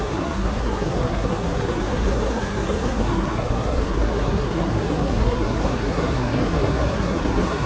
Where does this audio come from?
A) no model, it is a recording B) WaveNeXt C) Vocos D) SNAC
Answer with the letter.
D